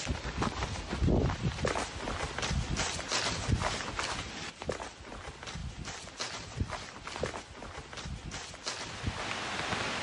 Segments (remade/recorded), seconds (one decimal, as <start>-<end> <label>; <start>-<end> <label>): 0.0-10.0 recorded